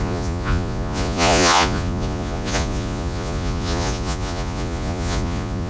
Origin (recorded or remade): remade